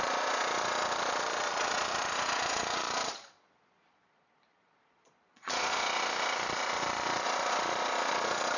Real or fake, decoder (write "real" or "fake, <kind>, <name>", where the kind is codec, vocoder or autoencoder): fake, vocoder, Vocos